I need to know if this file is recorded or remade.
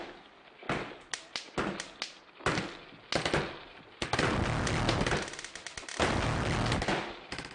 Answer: recorded